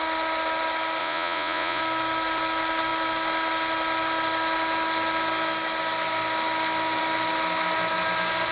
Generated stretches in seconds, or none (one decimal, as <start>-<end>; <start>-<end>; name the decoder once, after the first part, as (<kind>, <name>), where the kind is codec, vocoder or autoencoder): 1.0-1.8 (vocoder, Vocos)